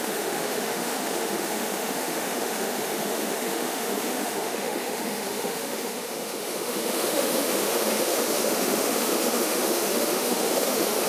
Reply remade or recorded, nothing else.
remade